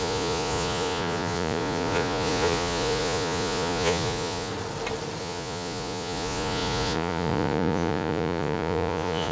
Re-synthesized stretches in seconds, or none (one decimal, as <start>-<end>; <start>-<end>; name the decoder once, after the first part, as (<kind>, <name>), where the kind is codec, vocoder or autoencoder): 0.0-4.5 (vocoder, Vocos); 5.2-9.3